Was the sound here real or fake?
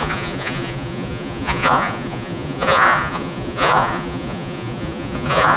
fake